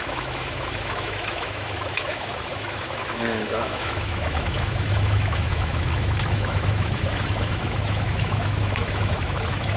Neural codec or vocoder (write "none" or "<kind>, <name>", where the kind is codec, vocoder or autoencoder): autoencoder, DAC-VAE